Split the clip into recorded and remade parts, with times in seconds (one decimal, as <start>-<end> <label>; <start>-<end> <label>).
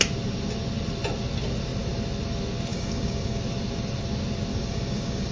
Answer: 0.0-2.7 recorded; 2.7-3.4 remade; 3.4-4.5 recorded; 4.5-5.3 remade